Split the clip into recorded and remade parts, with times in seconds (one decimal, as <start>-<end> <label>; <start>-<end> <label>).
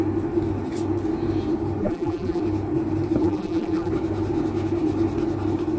0.0-1.8 recorded; 1.8-2.4 remade; 2.4-3.2 recorded; 3.2-3.9 remade; 3.9-5.8 recorded